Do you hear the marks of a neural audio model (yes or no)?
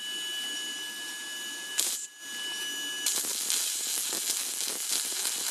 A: no